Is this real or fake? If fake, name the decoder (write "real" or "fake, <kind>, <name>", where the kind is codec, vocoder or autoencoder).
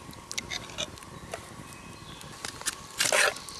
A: real